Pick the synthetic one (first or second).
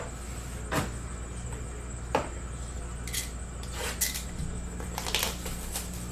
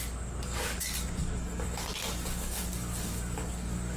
second